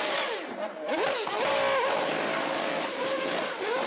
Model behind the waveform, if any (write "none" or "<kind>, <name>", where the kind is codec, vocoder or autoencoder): none